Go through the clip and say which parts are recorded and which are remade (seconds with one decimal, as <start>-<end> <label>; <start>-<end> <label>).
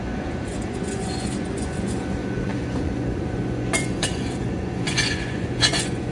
0.0-6.1 remade